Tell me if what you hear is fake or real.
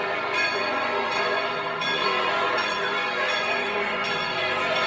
fake